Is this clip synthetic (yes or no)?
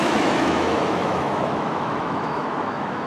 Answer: yes